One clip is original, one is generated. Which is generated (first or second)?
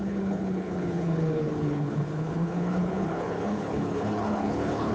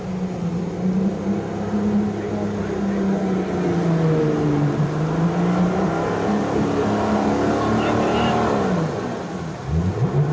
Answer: first